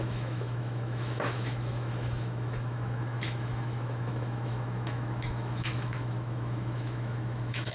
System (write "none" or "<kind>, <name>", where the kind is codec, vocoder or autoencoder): autoencoder, DAC-VAE